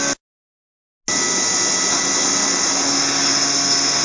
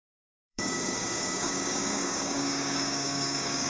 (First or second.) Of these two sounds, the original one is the first